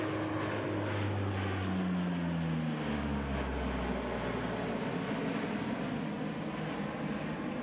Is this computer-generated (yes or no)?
no